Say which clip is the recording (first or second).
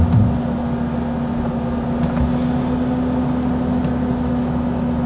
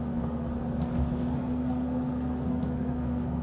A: first